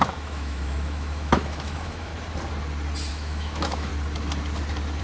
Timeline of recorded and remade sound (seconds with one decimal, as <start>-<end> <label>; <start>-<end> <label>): 0.0-2.1 remade; 2.1-3.1 recorded; 3.1-3.9 remade; 3.9-5.0 recorded